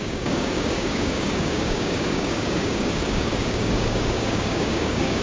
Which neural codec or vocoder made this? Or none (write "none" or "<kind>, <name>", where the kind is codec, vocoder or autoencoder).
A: codec, DAC